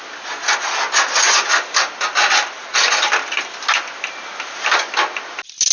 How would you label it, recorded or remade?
recorded